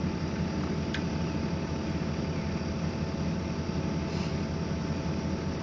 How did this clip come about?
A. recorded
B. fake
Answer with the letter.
A